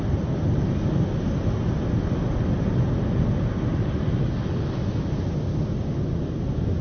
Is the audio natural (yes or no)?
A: yes